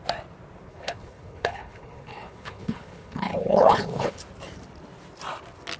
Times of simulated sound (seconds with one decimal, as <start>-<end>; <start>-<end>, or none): 0.7-4.2